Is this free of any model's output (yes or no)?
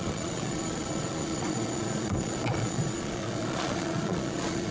no